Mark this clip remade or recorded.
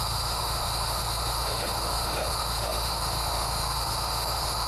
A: remade